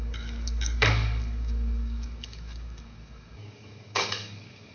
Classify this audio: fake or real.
fake